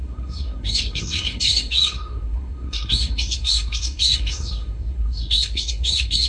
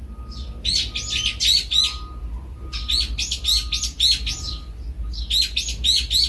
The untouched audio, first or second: second